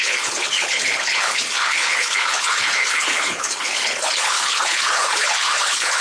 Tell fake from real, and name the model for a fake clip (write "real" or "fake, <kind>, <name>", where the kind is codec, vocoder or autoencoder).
fake, codec, HILCodec